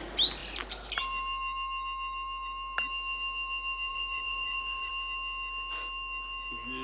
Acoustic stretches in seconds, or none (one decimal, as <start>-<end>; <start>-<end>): 0.0-3.9; 4.9-6.8